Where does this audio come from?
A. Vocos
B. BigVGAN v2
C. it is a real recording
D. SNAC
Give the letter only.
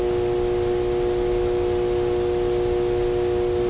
C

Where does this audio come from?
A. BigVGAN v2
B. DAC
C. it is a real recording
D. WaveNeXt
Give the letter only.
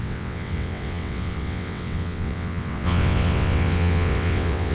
D